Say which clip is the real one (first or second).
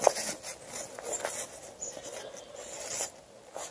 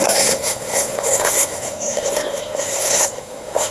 first